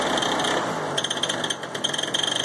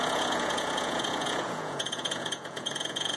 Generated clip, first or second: second